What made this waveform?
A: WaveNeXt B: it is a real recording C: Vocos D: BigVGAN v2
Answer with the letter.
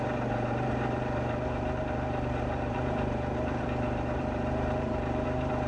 D